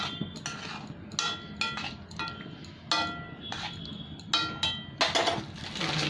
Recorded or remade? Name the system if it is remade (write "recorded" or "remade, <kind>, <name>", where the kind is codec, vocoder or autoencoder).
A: recorded